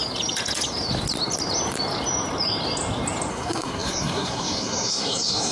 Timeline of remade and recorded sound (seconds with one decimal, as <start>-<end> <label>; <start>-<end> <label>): 0.0-3.3 recorded; 3.3-5.5 remade

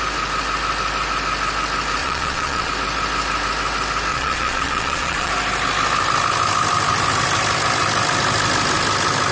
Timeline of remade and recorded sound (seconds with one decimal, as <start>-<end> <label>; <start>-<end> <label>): 0.0-2.0 recorded; 2.0-2.7 remade; 2.7-4.1 recorded; 4.1-5.3 remade; 5.3-9.3 recorded

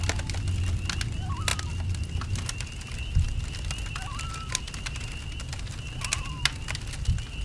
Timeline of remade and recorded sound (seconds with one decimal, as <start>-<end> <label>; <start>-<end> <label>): 0.0-7.4 recorded

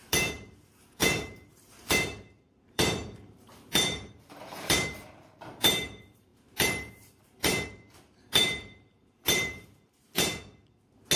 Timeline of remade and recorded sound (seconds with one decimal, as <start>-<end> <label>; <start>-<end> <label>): 0.0-10.3 remade; 10.3-11.2 recorded

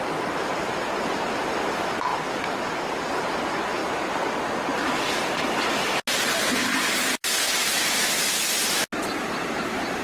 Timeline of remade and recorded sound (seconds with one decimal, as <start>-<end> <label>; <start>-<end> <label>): 0.0-10.0 recorded